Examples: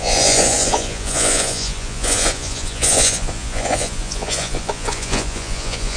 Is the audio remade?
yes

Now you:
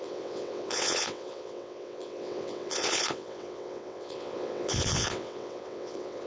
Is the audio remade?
yes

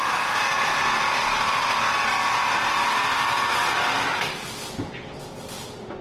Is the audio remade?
no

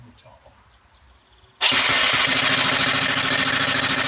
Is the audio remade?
no